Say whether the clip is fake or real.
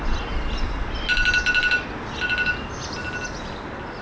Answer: real